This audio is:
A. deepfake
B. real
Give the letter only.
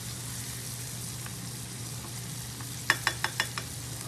B